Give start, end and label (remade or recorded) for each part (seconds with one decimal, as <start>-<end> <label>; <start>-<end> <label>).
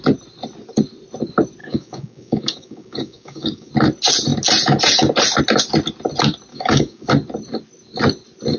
0.0-1.6 recorded; 1.6-3.7 remade; 3.7-6.5 recorded; 6.5-7.1 remade; 7.1-8.6 recorded